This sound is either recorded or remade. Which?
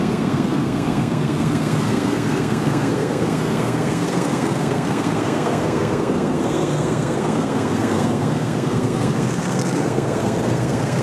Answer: remade